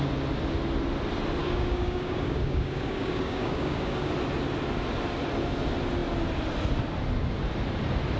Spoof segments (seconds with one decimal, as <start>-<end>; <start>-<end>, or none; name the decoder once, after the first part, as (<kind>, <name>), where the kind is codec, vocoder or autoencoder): 1.4-4.1 (codec, DAC)